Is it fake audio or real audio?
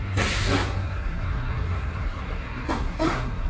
fake